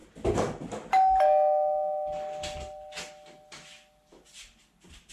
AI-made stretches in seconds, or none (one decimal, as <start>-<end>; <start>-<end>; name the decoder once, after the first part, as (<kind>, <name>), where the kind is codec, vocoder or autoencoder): none